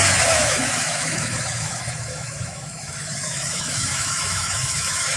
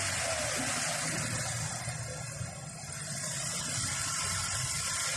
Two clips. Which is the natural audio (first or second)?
second